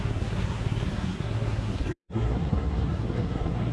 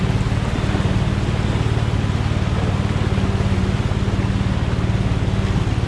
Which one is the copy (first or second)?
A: first